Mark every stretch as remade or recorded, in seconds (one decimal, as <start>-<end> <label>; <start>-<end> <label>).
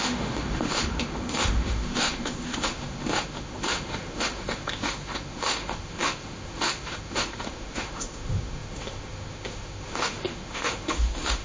0.0-11.4 remade